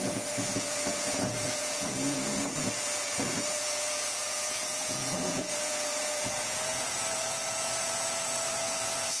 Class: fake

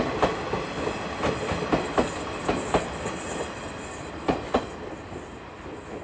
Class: real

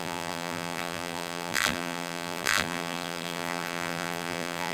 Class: fake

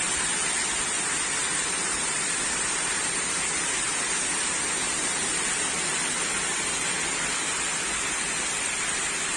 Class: real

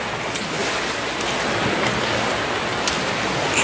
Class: real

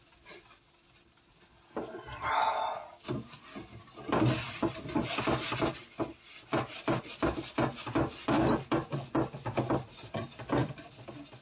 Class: real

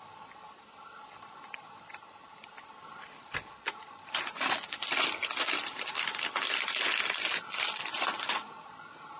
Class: real